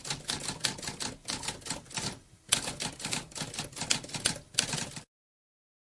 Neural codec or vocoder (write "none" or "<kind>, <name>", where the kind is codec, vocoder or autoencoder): none